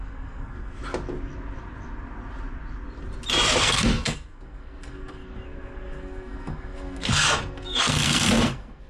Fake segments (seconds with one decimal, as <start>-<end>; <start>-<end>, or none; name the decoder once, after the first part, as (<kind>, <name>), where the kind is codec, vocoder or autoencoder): 0.0-0.8 (codec, SNAC); 3.6-8.9